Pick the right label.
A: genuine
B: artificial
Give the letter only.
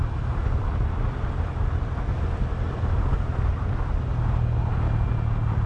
A